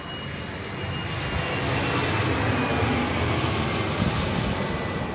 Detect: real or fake real